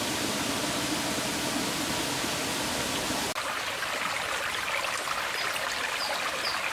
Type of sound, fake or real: real